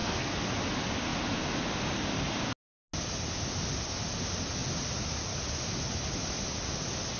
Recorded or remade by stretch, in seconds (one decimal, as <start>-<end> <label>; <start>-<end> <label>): 0.0-0.5 remade; 0.5-7.2 recorded

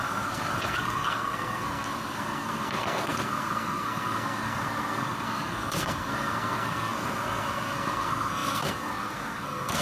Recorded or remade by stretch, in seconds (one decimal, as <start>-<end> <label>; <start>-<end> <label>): 0.0-9.8 remade

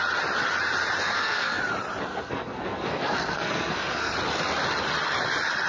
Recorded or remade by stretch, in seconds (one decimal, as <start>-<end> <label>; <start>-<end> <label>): 0.0-1.0 recorded; 1.0-1.6 remade; 1.6-2.1 recorded; 2.1-4.1 remade; 4.1-5.7 recorded

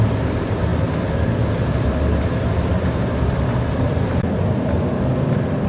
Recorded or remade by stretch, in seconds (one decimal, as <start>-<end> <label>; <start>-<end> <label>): 0.0-5.7 recorded

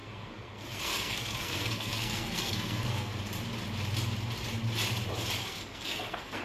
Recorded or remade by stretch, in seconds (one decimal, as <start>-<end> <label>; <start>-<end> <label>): 0.0-3.1 remade; 3.1-5.4 recorded; 5.4-6.4 remade

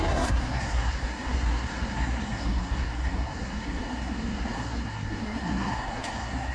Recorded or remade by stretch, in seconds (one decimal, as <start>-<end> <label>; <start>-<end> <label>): 0.0-6.5 remade

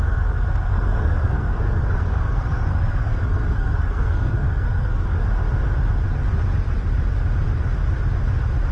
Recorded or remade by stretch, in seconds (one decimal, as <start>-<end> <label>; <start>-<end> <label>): 0.0-5.1 remade; 5.1-8.7 recorded

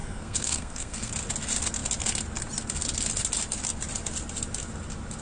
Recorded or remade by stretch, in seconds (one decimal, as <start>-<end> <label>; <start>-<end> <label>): 0.0-1.1 remade; 1.1-5.2 recorded